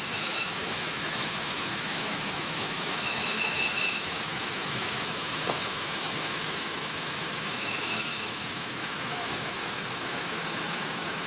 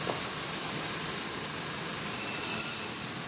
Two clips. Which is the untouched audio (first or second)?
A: second